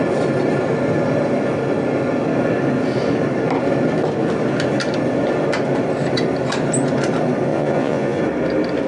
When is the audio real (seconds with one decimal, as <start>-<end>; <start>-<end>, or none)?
0.0-7.5; 8.2-8.9